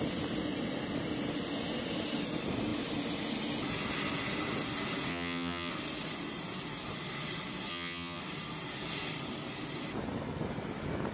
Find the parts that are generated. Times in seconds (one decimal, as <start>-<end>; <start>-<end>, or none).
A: 5.1-5.7; 7.7-8.2